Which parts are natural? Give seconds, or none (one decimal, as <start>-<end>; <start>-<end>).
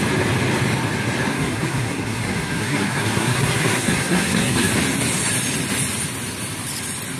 0.0-1.3; 4.7-7.2